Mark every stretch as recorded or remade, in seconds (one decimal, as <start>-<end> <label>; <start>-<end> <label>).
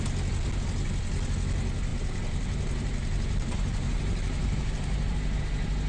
0.0-1.9 recorded; 1.9-5.4 remade; 5.4-5.9 recorded